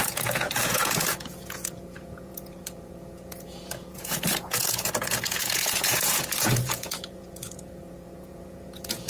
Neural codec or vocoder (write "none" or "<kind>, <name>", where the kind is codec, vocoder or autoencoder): vocoder, Vocos